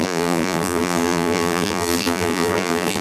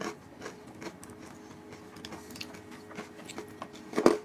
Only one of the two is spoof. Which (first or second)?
first